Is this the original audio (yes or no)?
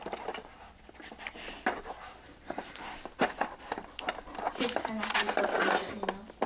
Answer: yes